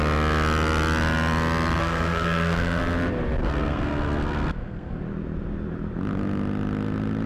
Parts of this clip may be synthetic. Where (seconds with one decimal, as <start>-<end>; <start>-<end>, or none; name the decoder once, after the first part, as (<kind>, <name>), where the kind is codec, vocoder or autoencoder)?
1.8-2.8 (codec, SNAC); 3.4-5.0